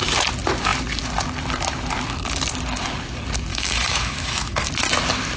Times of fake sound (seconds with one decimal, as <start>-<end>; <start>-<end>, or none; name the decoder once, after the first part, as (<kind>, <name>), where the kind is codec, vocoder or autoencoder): 3.5-4.7 (autoencoder, DAC-VAE)